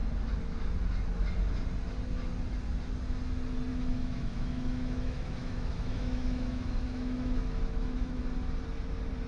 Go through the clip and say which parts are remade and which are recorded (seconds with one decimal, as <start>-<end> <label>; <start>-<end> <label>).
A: 0.0-3.7 recorded; 3.7-8.2 remade; 8.2-9.3 recorded